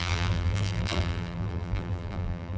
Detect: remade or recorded remade